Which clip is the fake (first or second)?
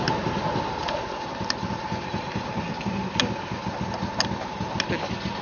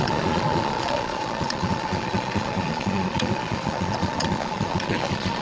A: second